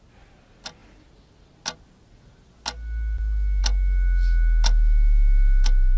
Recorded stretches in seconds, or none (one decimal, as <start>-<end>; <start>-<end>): 0.0-6.0